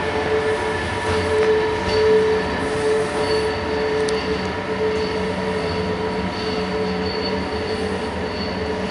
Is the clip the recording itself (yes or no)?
yes